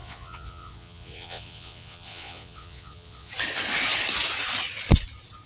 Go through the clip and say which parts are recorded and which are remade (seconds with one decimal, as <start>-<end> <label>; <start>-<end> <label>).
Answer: 0.0-3.3 remade; 3.3-5.5 recorded